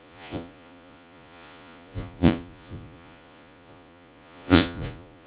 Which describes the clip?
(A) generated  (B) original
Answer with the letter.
A